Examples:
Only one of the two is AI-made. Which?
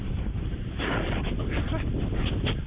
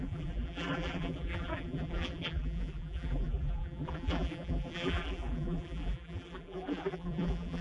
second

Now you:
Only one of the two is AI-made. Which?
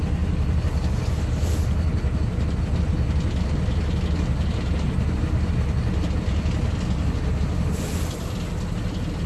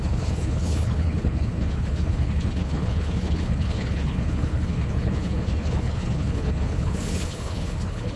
second